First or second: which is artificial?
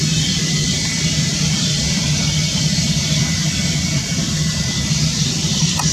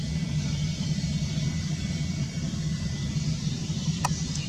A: first